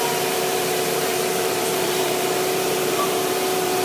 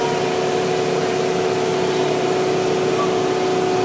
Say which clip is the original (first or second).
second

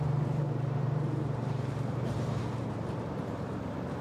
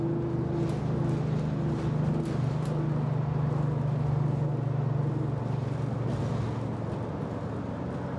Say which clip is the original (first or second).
second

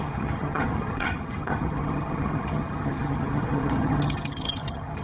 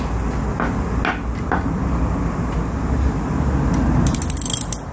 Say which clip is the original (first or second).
second